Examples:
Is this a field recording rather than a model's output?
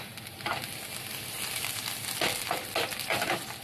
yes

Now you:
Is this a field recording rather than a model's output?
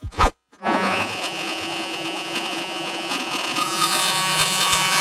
no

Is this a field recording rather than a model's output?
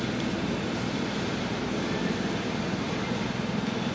yes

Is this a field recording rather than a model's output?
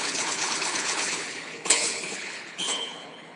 no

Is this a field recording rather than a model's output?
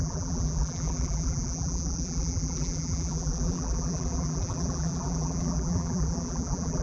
no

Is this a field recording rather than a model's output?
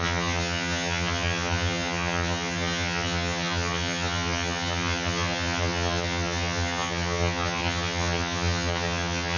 no